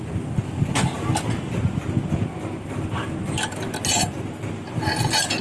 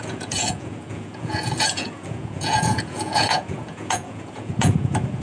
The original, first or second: first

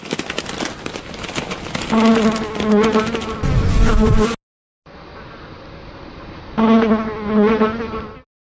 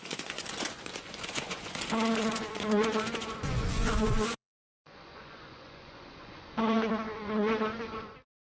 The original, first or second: first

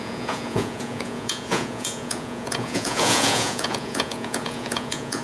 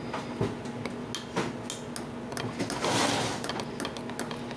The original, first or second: second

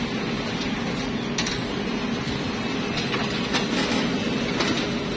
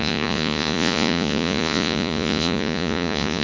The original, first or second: first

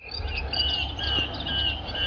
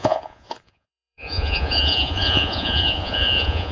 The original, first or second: first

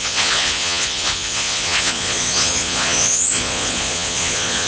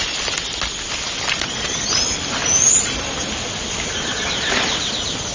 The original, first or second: second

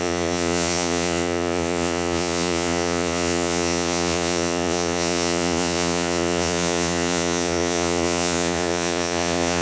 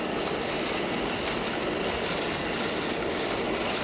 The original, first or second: second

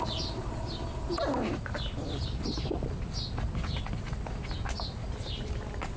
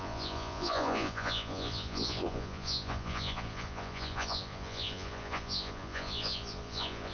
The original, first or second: first